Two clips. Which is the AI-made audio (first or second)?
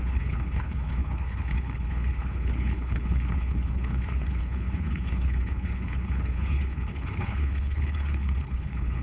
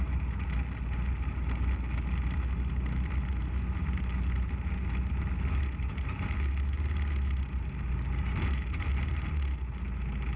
first